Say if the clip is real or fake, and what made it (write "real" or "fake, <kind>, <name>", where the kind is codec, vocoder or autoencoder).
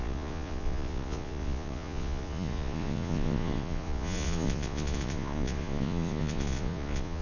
fake, vocoder, Vocos